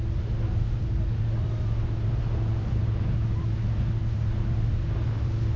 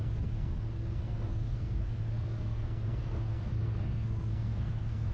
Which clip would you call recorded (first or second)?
first